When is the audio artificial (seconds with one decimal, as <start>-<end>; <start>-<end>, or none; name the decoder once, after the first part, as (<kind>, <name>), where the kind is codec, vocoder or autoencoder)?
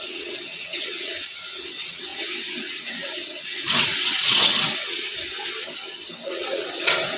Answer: 0.0-7.2 (vocoder, WaveNeXt)